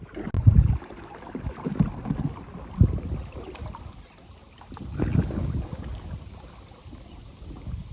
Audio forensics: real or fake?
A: real